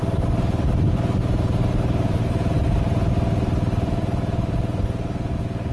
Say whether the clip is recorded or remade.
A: recorded